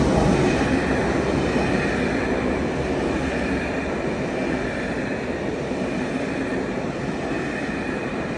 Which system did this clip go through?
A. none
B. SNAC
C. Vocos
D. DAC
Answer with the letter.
A